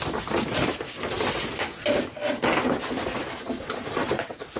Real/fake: real